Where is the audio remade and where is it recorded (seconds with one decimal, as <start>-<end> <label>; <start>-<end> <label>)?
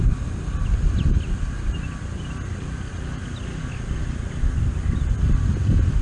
0.0-6.0 recorded